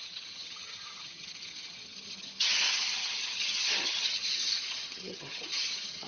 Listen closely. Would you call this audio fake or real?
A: fake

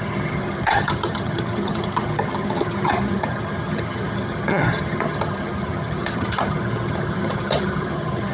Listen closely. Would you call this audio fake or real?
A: fake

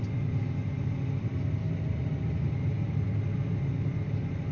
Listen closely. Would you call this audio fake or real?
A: real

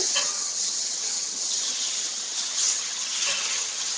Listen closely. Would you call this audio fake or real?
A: fake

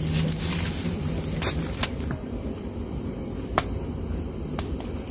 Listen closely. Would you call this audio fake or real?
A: real